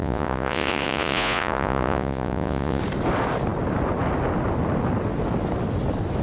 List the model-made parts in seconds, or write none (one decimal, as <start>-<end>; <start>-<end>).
0.0-2.8